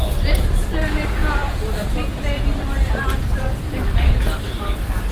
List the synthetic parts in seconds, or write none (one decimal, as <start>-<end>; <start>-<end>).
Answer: 1.2-4.1